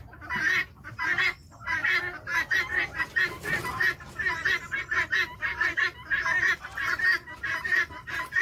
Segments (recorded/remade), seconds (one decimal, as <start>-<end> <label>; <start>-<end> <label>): 0.0-8.4 recorded